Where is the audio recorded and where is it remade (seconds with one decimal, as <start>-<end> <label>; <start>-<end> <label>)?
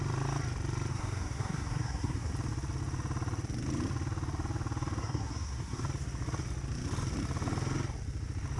0.0-0.9 recorded; 0.9-2.3 remade; 2.3-5.0 recorded; 5.0-5.8 remade; 5.8-8.6 recorded